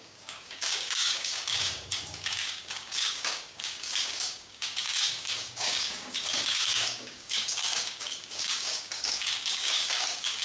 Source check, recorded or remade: remade